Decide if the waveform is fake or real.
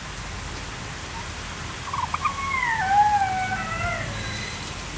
real